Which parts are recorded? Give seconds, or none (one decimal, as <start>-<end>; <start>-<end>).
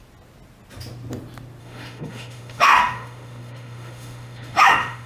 0.0-1.6